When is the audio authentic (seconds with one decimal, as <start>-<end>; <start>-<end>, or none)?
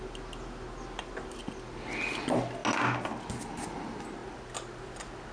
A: 0.0-5.3